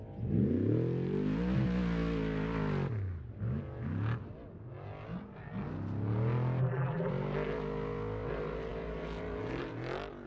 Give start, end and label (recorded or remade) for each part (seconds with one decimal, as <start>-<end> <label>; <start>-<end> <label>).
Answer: 0.0-6.6 recorded; 6.6-7.1 remade; 7.1-10.3 recorded